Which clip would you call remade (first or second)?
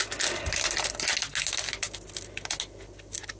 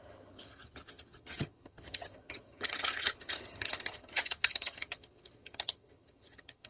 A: second